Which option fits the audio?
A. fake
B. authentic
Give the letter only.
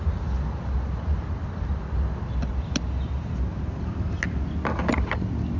B